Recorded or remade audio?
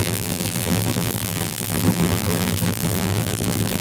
remade